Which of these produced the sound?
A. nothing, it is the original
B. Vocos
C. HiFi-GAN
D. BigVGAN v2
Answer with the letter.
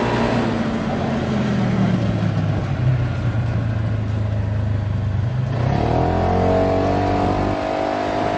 A